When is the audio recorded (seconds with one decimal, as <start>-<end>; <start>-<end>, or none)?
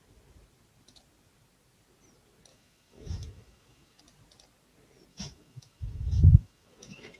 0.0-2.5; 4.0-5.1